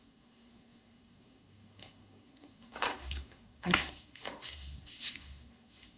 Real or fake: fake